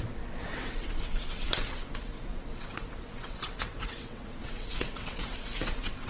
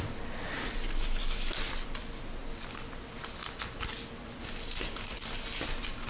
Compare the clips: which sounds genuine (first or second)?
second